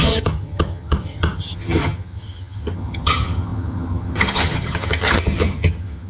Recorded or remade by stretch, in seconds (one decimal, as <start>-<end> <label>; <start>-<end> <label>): 0.0-6.1 remade